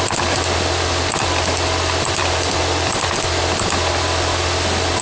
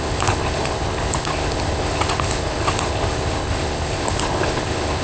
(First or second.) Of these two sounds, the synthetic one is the second